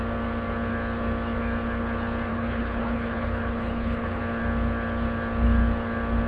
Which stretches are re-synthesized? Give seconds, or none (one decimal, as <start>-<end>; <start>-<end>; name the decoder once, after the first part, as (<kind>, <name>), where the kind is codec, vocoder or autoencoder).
2.3-4.2 (codec, HILCodec)

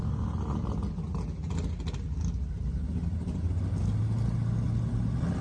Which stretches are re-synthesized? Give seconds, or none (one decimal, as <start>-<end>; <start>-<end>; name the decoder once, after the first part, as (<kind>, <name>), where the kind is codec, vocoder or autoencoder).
3.1-3.6 (vocoder, BigVGAN v2)